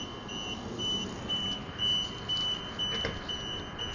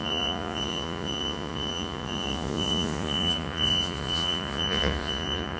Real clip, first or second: first